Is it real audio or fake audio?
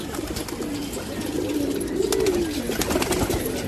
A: real